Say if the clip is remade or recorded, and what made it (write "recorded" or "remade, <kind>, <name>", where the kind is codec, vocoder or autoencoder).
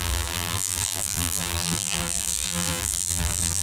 remade, vocoder, BigVGAN v2